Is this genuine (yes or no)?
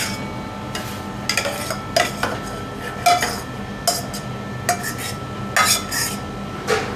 yes